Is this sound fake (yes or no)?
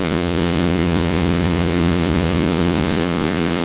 yes